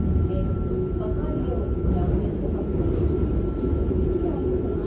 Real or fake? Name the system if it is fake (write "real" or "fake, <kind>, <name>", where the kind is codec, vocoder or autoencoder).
real